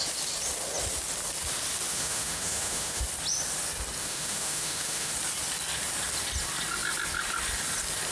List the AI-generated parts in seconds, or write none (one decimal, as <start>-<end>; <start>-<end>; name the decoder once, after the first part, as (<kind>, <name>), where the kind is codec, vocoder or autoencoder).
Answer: 1.9-3.0 (autoencoder, DAC-VAE); 4.0-5.1